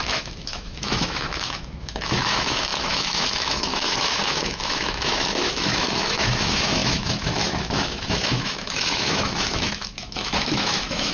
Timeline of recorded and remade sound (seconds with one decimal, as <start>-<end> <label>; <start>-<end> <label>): 0.0-11.1 remade